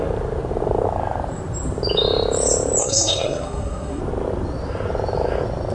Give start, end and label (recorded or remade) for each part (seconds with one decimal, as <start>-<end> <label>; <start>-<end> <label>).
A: 0.0-2.8 recorded; 2.8-4.0 remade; 4.0-5.7 recorded